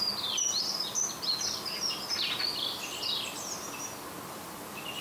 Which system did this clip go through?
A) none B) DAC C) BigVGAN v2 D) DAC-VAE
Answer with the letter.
A